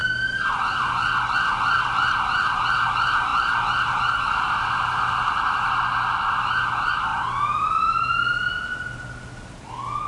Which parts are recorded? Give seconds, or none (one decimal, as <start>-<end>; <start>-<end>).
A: 0.0-10.1